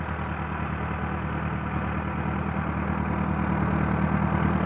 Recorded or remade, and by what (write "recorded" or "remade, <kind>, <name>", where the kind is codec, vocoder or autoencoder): recorded